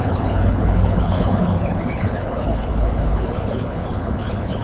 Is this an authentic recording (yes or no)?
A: no